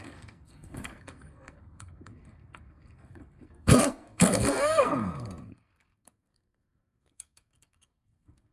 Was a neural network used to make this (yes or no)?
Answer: yes